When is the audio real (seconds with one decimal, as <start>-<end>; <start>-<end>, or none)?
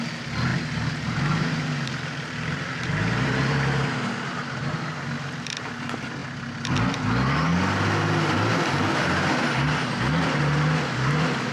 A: 0.0-0.5; 4.8-11.5